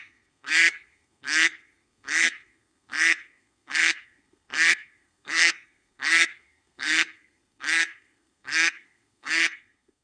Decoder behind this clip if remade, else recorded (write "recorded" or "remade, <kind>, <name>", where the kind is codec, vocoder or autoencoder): remade, codec, SNAC